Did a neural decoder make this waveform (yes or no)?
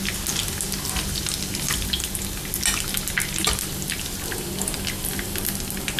no